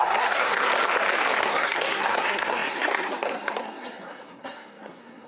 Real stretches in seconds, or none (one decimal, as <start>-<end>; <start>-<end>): 0.7-1.4